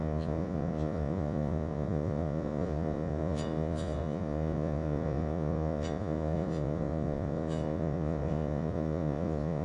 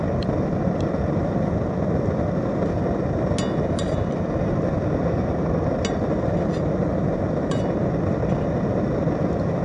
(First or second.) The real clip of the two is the second